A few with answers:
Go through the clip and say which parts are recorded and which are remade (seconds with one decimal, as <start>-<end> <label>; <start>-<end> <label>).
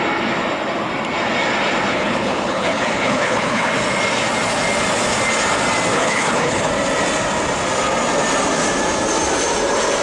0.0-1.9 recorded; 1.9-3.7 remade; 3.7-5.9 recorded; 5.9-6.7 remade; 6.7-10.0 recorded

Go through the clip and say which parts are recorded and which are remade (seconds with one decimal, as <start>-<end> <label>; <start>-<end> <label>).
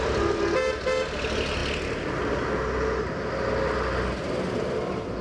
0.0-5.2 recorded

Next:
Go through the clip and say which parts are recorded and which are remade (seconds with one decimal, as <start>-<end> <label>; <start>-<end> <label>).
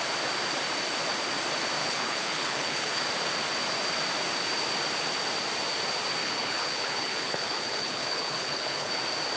0.0-1.8 recorded; 1.8-3.0 remade; 3.0-6.2 recorded; 6.2-9.0 remade; 9.0-9.4 recorded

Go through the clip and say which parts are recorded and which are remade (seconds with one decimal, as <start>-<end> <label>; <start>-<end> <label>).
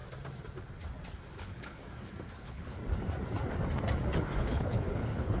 0.0-1.3 recorded; 1.3-1.8 remade; 1.8-2.4 recorded; 2.4-2.8 remade; 2.8-4.4 recorded; 4.4-5.4 remade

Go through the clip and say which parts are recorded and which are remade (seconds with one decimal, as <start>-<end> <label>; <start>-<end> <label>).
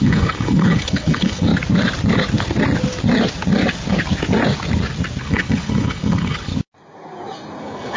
0.0-1.5 remade; 1.5-5.2 recorded; 5.2-6.5 remade; 6.5-7.6 recorded; 7.6-8.0 remade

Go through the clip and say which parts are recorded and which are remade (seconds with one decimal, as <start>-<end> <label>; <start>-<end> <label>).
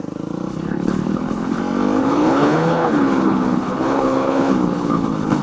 0.0-0.5 recorded; 0.5-1.6 remade; 1.6-2.0 recorded; 2.0-5.4 remade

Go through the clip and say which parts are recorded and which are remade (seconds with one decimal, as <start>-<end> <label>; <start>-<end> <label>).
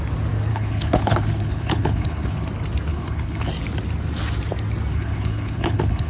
0.0-0.5 recorded; 0.5-2.5 remade; 2.5-2.9 recorded; 2.9-3.5 remade; 3.5-4.9 recorded; 4.9-6.1 remade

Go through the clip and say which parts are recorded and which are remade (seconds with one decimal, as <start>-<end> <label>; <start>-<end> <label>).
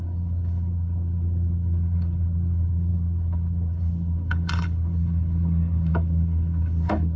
0.0-7.2 remade